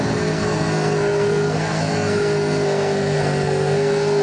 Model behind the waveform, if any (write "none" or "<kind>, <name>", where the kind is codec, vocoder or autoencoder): codec, SNAC